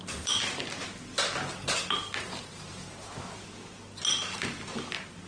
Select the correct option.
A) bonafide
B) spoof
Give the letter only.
A